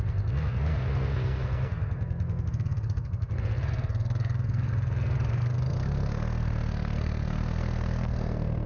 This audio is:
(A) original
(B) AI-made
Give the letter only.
B